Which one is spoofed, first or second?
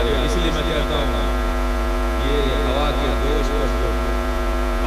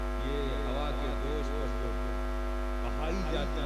first